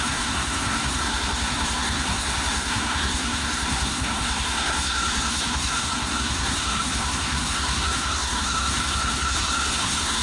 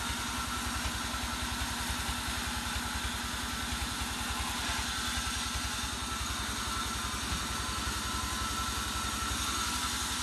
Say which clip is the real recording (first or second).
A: second